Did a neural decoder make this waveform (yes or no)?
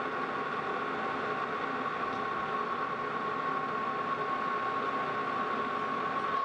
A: no